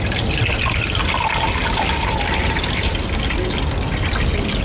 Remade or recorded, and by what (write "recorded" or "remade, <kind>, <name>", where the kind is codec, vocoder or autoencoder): recorded